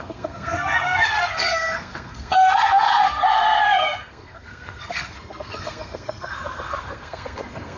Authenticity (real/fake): fake